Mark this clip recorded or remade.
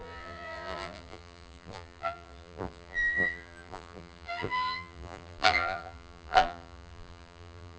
remade